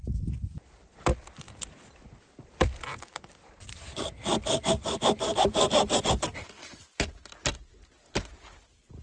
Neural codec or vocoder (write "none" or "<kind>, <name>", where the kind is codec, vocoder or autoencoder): none